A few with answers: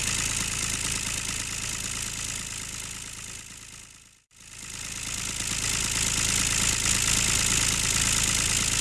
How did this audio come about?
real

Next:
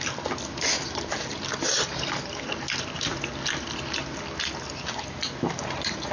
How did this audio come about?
real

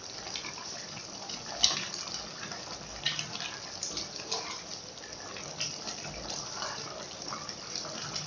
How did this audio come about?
fake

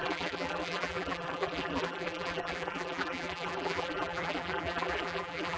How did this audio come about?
fake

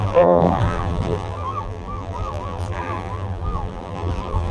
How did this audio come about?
fake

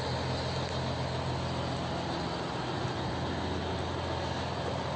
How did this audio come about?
real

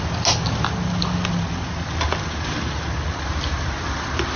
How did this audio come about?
real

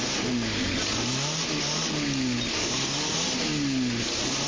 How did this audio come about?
real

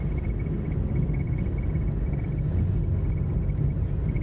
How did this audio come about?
real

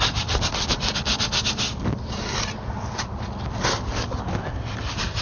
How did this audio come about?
real